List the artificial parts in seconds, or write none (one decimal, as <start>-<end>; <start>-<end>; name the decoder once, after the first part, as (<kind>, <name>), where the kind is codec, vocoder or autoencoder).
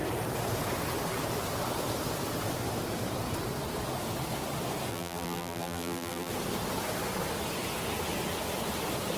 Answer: 4.9-6.3 (vocoder, BigVGAN v2)